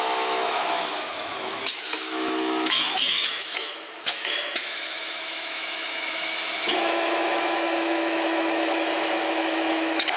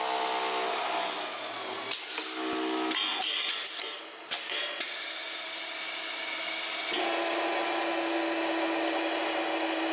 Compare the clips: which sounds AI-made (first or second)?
first